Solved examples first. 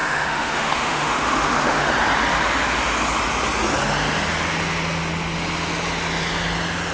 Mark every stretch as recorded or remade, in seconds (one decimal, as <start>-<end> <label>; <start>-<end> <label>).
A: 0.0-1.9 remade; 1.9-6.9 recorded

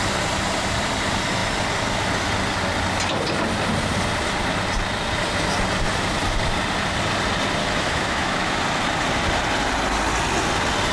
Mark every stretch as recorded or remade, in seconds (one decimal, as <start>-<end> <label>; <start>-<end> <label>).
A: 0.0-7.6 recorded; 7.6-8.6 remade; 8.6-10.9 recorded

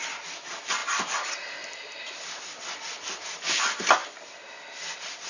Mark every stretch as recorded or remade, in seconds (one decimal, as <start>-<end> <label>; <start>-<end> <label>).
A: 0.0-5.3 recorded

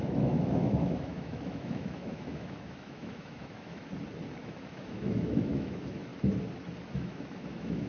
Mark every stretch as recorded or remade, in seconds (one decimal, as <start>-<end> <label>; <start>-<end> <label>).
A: 0.0-3.9 remade; 3.9-4.4 recorded; 4.4-6.1 remade; 6.1-6.9 recorded; 6.9-7.9 remade

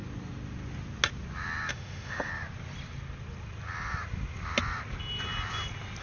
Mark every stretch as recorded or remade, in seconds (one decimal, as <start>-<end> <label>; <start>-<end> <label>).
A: 0.0-1.7 recorded; 1.7-2.3 remade; 2.3-6.0 recorded

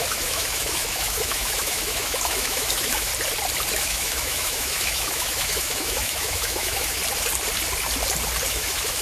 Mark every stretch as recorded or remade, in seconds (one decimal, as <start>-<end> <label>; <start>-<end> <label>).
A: 0.0-3.1 remade; 3.1-3.7 recorded; 3.7-7.0 remade; 7.0-8.5 recorded; 8.5-9.0 remade